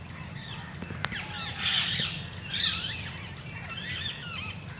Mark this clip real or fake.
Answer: real